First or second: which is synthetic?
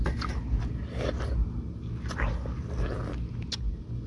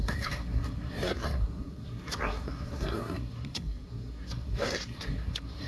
second